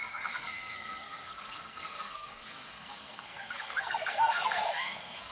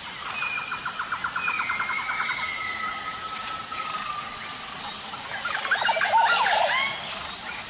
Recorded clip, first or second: second